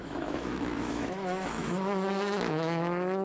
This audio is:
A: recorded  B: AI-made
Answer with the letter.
B